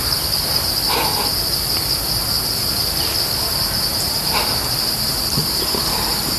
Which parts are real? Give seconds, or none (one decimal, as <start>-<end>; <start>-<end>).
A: 0.0-6.4